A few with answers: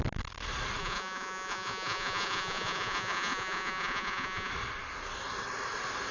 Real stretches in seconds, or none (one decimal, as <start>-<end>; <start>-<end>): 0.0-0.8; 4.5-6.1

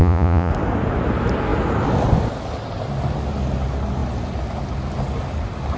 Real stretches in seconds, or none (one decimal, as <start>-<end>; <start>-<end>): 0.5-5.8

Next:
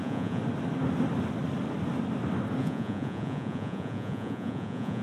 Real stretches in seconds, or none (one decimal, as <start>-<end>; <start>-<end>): 0.4-2.6

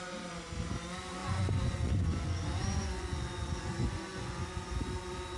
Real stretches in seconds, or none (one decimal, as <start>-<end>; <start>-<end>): 0.0-1.2; 4.4-5.4

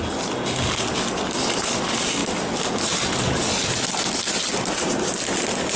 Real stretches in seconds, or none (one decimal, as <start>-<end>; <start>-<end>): 0.0-5.8